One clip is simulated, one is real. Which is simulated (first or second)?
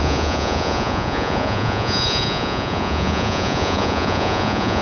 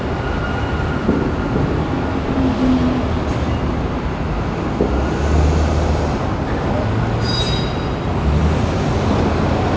first